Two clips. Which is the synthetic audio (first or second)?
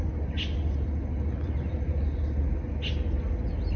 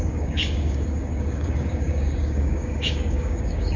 second